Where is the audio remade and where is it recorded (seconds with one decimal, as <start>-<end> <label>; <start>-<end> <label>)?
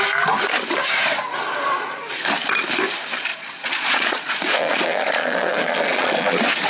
0.0-3.3 recorded; 3.3-6.3 remade; 6.3-6.7 recorded